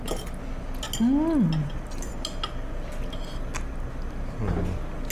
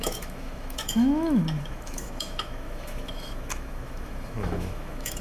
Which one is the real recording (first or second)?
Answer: first